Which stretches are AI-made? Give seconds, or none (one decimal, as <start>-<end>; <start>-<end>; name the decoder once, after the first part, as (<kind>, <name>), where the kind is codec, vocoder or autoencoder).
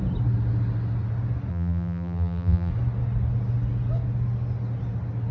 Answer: 1.5-2.7 (vocoder, BigVGAN v2)